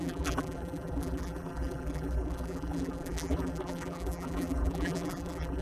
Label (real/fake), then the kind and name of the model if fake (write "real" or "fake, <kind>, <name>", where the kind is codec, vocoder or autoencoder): fake, vocoder, BigVGAN v2